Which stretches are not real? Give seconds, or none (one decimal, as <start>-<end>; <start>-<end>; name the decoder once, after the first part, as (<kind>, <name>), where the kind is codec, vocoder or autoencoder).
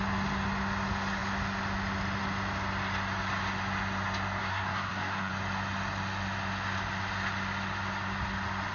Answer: 4.4-5.3 (codec, SNAC)